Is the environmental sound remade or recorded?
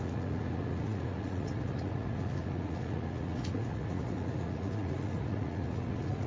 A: remade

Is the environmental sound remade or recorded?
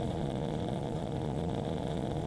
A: remade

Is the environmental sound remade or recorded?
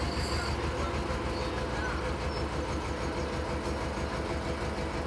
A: recorded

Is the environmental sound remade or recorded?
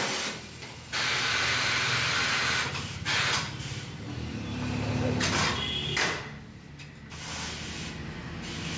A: recorded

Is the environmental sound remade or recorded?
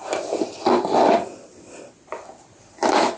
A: recorded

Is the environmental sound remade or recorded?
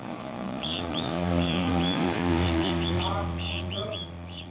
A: remade